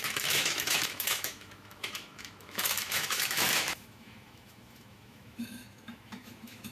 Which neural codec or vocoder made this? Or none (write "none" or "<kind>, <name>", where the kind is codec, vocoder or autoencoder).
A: autoencoder, DAC-VAE